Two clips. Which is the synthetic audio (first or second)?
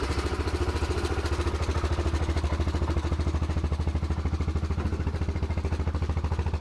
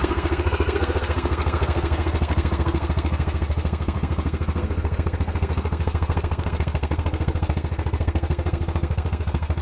second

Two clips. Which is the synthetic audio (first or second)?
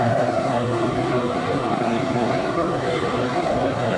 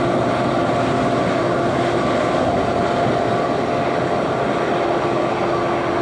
first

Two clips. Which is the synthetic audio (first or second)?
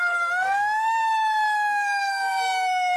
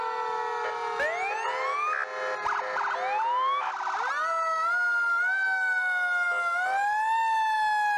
first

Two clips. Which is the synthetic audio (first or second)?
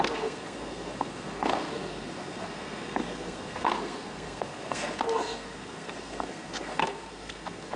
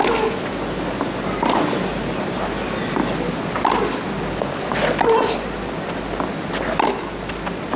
first